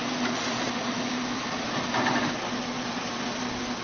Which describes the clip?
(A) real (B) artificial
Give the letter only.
A